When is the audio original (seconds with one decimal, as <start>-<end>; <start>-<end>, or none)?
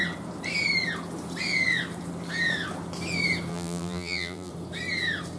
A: 0.0-3.5; 4.5-5.4